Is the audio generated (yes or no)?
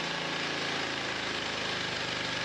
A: no